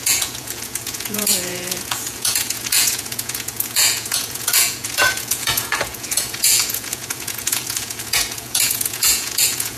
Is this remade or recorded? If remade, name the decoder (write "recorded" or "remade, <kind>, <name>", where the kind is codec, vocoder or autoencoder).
remade, vocoder, Vocos